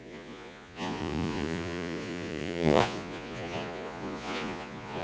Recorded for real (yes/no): no